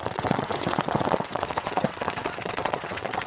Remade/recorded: remade